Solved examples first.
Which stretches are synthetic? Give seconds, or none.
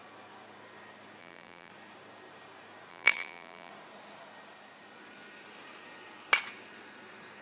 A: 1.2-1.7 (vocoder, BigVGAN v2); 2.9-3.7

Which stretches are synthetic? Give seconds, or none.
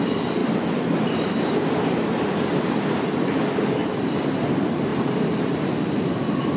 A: 0.4-4.4 (vocoder, BigVGAN v2); 4.9-5.4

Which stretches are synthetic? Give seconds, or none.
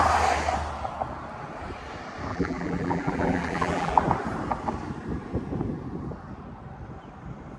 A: 2.3-4.0 (vocoder, BigVGAN v2)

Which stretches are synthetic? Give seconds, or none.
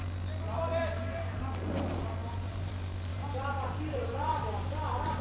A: 0.8-1.4 (vocoder, BigVGAN v2); 2.2-2.7; 3.1-4.8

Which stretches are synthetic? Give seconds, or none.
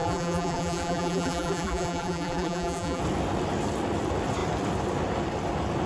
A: 0.0-3.0 (vocoder, BigVGAN v2)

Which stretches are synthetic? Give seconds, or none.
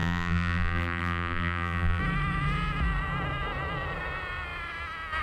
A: 0.0-2.0 (vocoder, BigVGAN v2)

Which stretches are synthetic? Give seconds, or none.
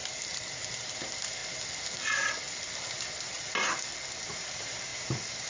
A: 0.9-1.4 (vocoder, BigVGAN v2); 4.3-5.5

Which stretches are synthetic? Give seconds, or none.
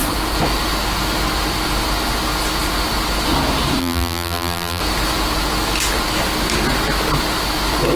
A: 3.8-4.8 (vocoder, BigVGAN v2)